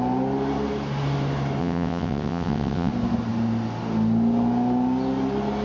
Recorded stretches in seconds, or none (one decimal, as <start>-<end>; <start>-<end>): 0.0-1.6; 2.9-5.6